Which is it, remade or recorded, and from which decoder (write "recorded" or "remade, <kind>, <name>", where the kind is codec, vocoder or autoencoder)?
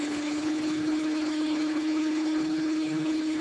remade, codec, HILCodec